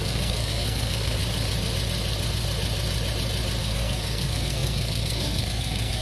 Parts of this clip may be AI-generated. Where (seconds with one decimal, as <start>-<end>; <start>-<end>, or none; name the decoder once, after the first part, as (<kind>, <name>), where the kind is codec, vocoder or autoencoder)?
0.0-1.2 (codec, SNAC); 3.6-6.0